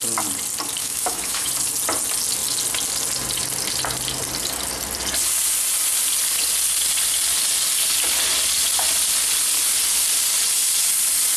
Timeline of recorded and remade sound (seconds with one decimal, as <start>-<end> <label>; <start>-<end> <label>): 0.0-0.8 recorded; 0.8-1.5 remade; 1.5-11.4 recorded